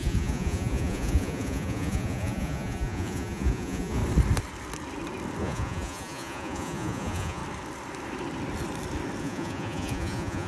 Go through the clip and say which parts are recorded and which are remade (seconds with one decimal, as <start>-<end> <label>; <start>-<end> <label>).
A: 0.0-4.0 remade; 4.0-5.4 recorded; 5.4-7.4 remade; 7.4-9.2 recorded; 9.2-10.5 remade